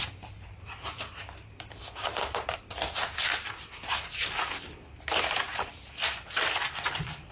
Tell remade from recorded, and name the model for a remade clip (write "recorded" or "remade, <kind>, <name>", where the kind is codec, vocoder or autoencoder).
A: remade, vocoder, BigVGAN v2